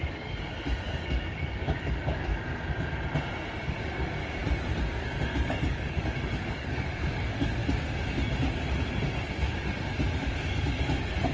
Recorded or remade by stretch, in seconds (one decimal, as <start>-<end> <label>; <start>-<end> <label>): 0.0-2.3 remade; 2.3-3.6 recorded; 3.6-4.4 remade; 4.4-5.0 recorded; 5.0-7.6 remade; 7.6-10.3 recorded; 10.3-11.3 remade